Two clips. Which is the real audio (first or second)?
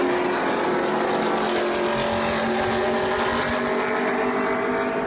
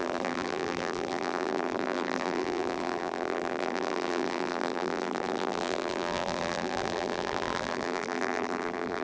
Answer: first